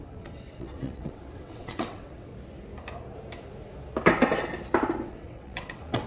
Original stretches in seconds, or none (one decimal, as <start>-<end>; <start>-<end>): 2.3-5.1